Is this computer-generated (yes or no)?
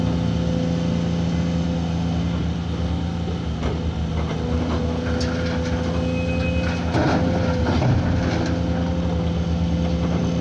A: no